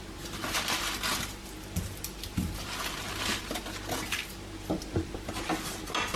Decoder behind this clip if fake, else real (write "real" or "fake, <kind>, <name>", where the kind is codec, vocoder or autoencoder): real